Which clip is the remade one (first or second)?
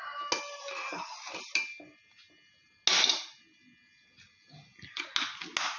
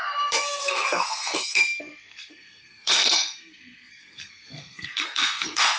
second